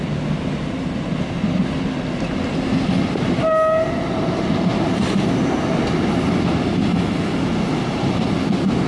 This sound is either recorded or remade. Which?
recorded